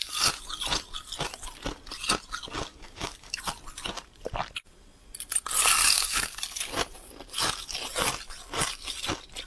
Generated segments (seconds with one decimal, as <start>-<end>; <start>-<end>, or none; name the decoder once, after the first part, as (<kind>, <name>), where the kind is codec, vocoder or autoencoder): 2.7-3.4 (codec, DAC); 5.8-6.4